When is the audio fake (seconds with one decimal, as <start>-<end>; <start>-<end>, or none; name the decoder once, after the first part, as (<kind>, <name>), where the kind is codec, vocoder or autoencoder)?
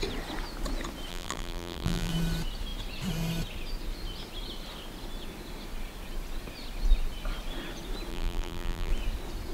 1.1-2.1 (vocoder, BigVGAN v2); 8.1-8.9